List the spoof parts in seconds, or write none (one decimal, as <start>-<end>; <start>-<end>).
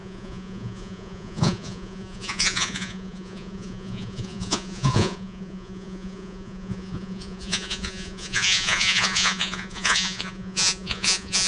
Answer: 0.0-11.5